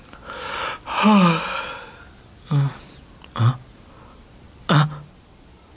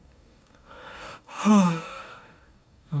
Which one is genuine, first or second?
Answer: first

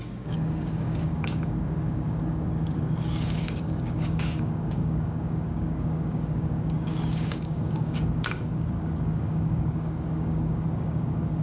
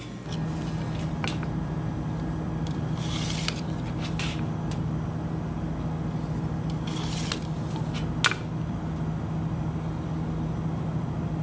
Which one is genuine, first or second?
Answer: second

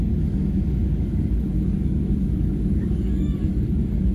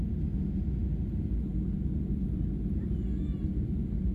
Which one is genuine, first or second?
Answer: second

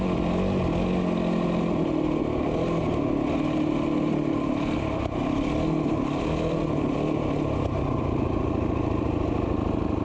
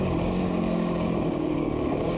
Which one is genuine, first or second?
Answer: first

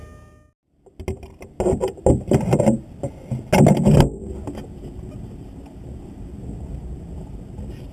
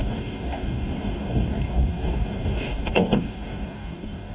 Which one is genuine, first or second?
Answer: first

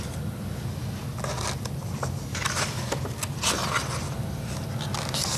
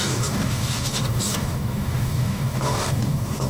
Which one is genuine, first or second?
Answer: first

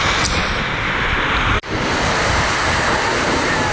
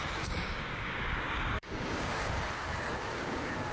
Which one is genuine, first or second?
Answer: first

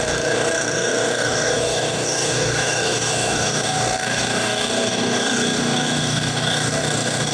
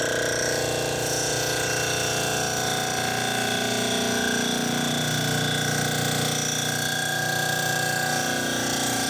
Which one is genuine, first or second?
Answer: second